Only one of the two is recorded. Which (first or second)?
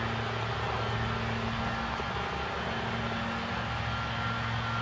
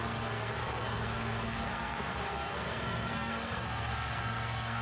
first